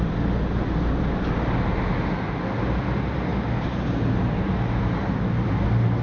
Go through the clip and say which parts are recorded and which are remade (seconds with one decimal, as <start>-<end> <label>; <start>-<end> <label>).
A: 0.0-6.0 recorded